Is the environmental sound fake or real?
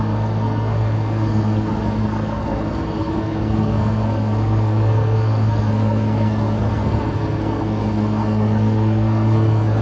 fake